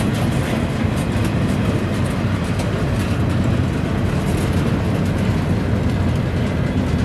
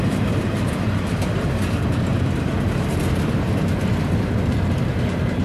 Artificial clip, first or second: second